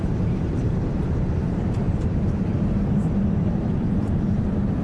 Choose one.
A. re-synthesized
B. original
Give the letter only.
A